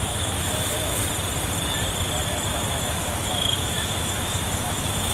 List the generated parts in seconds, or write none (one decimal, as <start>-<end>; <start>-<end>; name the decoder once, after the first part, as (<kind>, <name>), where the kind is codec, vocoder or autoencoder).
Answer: 0.0-1.0 (autoencoder, DAC-VAE); 2.5-5.1